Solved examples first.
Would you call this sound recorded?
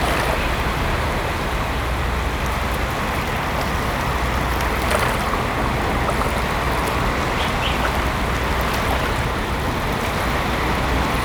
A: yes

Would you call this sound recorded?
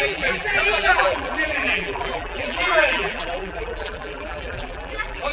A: no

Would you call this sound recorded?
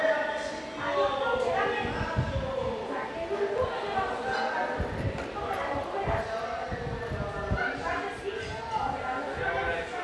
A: yes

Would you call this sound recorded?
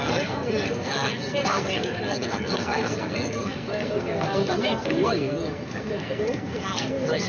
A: no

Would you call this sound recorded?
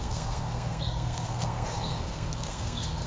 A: no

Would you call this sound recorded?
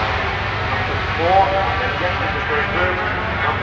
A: yes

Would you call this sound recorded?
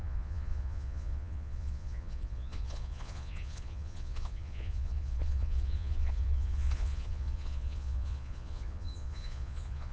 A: no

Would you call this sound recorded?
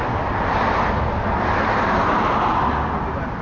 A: yes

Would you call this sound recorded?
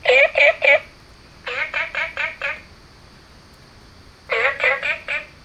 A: yes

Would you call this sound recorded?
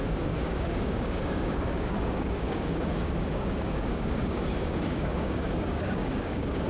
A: no